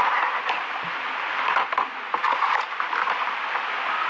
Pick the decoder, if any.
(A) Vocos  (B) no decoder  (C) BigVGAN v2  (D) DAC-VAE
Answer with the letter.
B